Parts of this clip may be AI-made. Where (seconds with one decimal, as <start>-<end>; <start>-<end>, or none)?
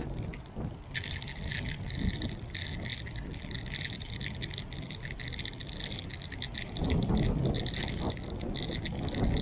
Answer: none